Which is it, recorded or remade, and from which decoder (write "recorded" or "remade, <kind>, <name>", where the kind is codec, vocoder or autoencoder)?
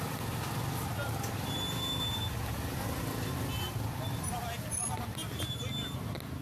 recorded